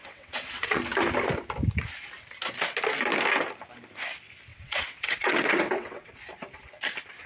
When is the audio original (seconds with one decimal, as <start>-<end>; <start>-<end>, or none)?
0.8-4.5; 6.1-7.3